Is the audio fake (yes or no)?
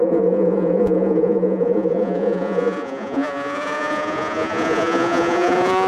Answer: yes